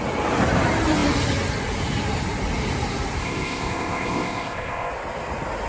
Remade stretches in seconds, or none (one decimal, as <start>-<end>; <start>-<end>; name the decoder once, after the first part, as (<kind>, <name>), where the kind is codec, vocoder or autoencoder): 3.2-4.9 (codec, ZipCodec)